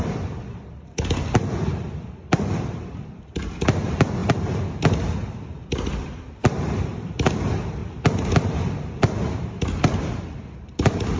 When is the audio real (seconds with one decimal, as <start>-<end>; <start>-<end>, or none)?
7.8-10.2